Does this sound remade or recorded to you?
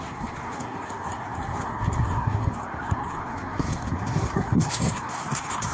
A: remade